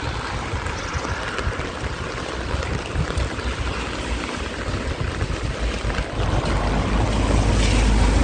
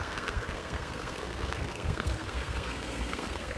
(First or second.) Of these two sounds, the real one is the first